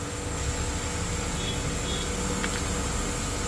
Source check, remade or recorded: recorded